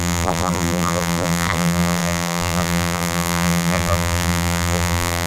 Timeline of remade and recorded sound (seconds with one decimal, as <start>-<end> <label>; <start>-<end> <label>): 0.0-5.3 remade